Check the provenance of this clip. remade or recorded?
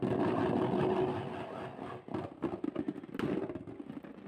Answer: recorded